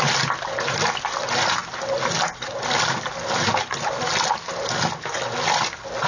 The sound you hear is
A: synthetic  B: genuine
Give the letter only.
B